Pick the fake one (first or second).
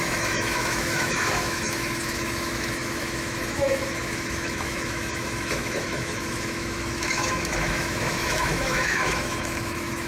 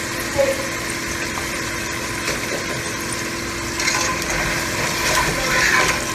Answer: first